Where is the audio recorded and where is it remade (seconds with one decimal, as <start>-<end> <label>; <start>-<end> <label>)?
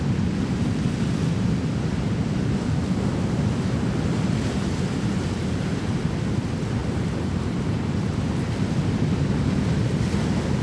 0.0-5.1 recorded; 5.1-6.0 remade; 6.0-6.8 recorded; 6.8-7.5 remade; 7.5-10.6 recorded